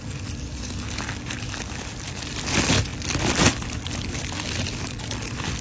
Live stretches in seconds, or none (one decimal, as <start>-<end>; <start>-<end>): 0.0-5.6